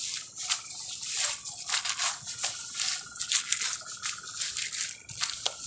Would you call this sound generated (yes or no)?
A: no